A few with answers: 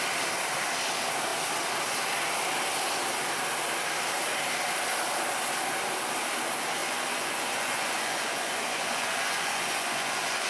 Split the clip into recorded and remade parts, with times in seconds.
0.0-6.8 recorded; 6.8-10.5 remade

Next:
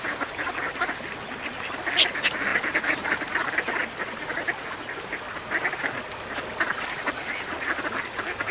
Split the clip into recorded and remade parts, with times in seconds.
0.0-8.5 recorded